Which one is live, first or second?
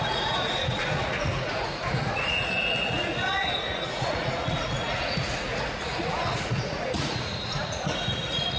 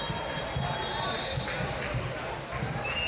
second